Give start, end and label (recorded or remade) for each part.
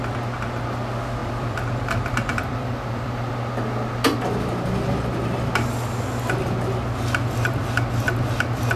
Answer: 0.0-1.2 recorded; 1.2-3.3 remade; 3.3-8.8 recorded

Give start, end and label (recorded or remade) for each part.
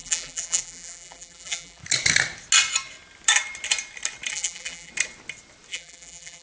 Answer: 0.0-1.8 remade; 1.8-4.3 recorded; 4.3-4.9 remade; 4.9-5.7 recorded; 5.7-6.4 remade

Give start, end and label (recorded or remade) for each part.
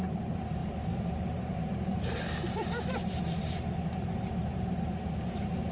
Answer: 0.0-5.7 remade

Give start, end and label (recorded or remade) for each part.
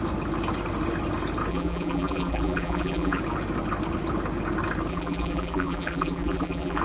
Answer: 0.0-1.5 recorded; 1.5-3.2 remade; 3.2-4.9 recorded; 4.9-6.8 remade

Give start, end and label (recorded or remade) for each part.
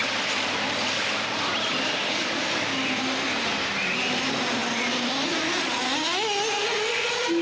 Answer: 0.0-3.0 remade; 3.0-4.6 recorded; 4.6-5.5 remade; 5.5-7.4 recorded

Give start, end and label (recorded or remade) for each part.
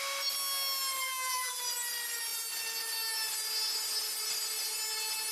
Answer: 0.0-1.0 recorded; 1.0-1.6 remade; 1.6-5.3 recorded